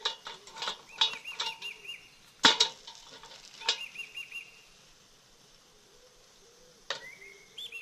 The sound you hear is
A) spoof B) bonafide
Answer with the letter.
B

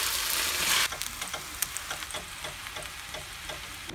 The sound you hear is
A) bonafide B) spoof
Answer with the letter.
A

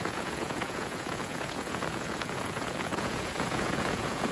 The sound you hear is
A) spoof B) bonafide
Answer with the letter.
A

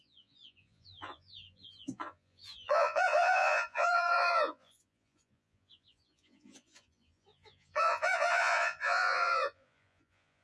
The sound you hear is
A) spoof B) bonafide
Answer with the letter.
A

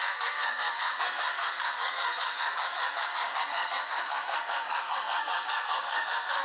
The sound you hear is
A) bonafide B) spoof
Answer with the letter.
B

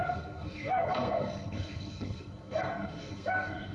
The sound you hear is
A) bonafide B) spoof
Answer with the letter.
B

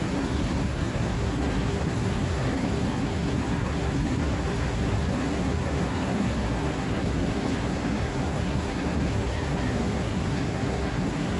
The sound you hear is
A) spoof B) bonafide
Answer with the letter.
A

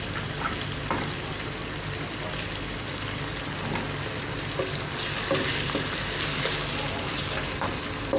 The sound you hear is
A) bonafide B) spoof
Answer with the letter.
A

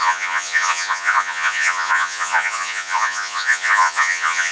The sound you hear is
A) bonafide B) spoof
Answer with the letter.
B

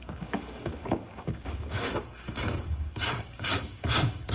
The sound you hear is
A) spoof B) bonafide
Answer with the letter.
A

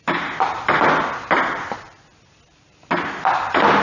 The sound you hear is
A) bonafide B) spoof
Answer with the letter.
A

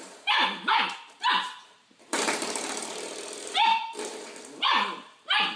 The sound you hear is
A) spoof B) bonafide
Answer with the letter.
A